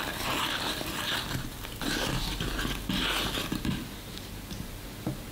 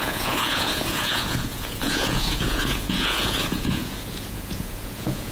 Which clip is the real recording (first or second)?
first